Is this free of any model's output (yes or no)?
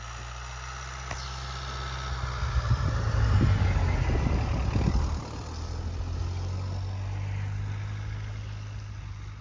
yes